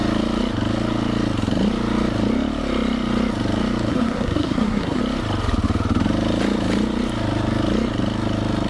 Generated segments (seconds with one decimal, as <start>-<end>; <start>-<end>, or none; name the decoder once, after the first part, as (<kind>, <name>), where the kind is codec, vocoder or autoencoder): 3.9-5.0 (codec, SNAC)